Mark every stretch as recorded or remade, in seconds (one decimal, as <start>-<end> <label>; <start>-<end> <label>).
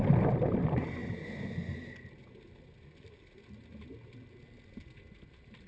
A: 0.0-5.7 recorded